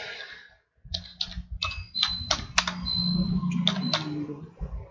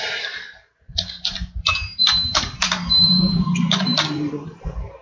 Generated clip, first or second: second